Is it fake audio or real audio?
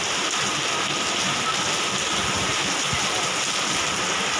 real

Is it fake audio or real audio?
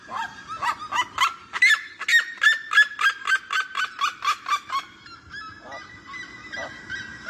real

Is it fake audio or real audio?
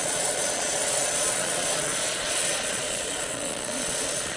fake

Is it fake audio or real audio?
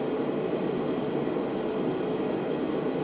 real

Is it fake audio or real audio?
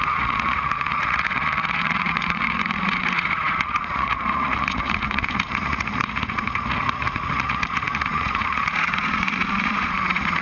fake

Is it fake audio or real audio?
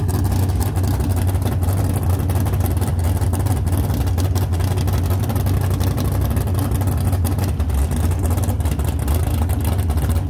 real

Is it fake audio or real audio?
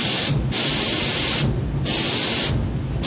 real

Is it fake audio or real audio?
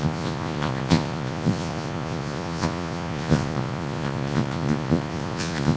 fake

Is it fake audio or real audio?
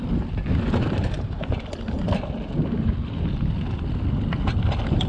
real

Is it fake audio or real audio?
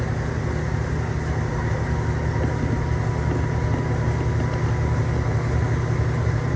real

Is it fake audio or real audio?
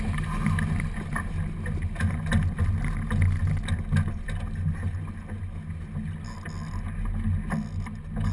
real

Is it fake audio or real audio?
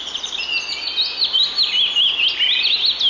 real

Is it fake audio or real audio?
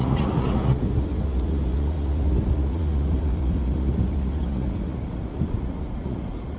fake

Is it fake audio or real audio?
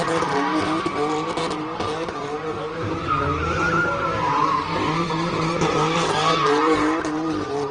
real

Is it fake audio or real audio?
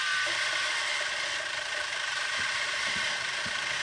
real